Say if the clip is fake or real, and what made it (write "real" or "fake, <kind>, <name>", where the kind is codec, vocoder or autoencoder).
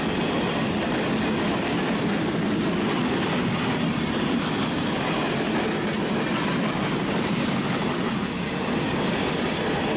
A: real